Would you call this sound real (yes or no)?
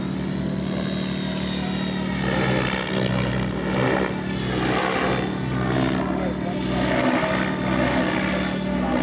yes